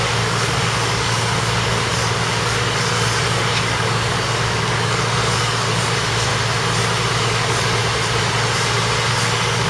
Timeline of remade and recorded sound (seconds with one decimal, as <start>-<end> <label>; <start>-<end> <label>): 0.0-6.3 remade; 6.3-7.1 recorded; 7.1-7.8 remade; 7.8-9.1 recorded; 9.1-9.7 remade